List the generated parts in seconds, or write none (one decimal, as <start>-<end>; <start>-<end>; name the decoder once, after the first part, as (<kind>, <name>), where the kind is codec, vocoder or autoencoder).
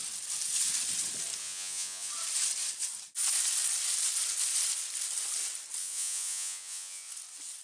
1.4-2.1 (vocoder, Vocos); 5.8-7.1